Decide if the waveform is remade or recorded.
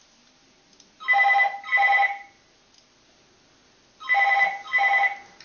recorded